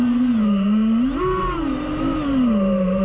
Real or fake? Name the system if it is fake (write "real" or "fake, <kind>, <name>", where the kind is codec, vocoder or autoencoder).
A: real